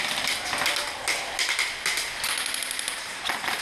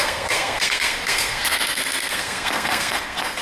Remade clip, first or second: second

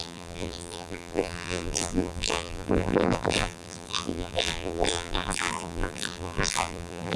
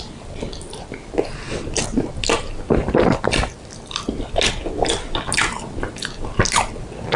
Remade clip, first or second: first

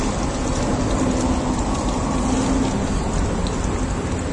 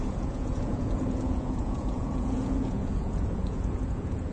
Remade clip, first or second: second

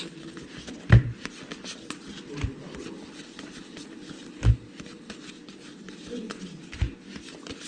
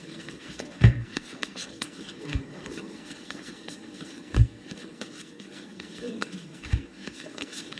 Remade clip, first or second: second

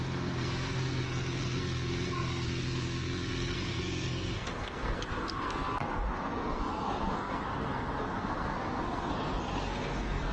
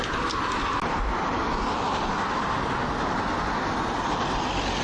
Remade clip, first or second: first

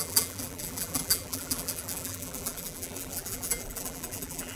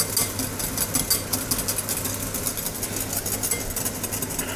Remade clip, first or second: first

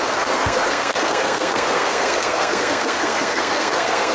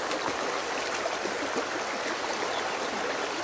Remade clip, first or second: first